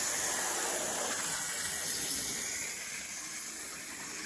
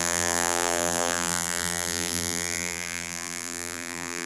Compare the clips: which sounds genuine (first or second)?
first